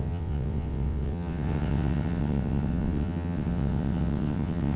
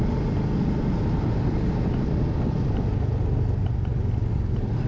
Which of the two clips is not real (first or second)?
first